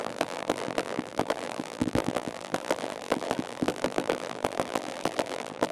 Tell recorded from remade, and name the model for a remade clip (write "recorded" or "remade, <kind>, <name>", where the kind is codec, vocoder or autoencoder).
remade, vocoder, BigVGAN v2